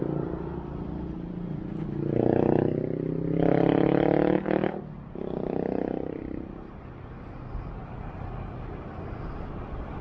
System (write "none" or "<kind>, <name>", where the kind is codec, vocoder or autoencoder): none